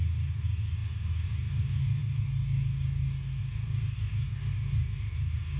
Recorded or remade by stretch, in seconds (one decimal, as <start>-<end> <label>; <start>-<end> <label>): 0.0-5.6 remade